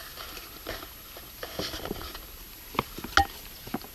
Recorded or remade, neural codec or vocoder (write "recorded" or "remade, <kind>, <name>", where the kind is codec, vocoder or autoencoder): recorded